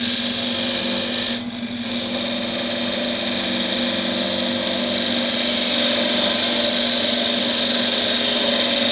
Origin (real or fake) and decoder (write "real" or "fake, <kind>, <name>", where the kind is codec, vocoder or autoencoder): real